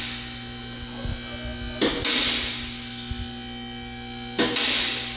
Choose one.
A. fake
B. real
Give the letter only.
B